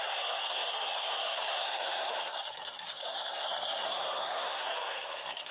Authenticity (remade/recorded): remade